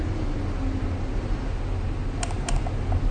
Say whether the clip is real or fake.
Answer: real